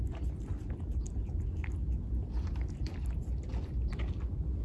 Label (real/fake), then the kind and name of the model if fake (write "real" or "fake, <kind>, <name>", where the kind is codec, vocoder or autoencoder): real